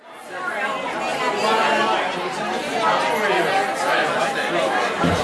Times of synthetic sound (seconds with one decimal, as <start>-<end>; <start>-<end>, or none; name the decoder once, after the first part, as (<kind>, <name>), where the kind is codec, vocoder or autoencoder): none